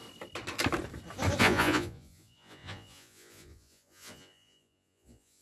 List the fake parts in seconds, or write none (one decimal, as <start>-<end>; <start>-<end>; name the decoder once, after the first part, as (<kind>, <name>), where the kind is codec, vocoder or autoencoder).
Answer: 1.4-5.4 (vocoder, Vocos)

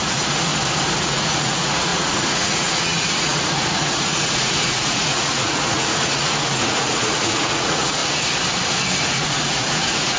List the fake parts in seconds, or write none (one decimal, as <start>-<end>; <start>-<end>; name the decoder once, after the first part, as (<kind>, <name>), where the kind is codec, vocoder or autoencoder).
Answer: 0.0-0.5 (vocoder, Vocos); 1.0-8.0; 9.0-10.2

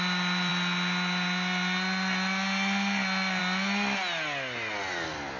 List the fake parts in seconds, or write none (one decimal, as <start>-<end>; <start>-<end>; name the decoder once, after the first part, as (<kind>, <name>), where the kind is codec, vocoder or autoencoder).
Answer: none